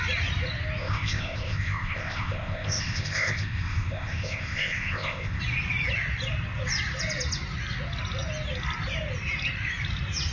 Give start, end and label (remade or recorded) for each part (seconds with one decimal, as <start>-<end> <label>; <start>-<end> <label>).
0.0-0.8 recorded; 0.8-5.4 remade; 5.4-10.3 recorded